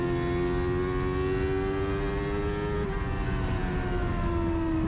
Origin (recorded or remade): recorded